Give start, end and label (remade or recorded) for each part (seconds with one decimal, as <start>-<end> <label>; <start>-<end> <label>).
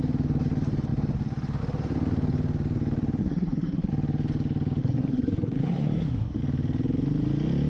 0.0-3.2 recorded; 3.2-3.9 remade; 3.9-4.8 recorded; 4.8-6.4 remade; 6.4-7.7 recorded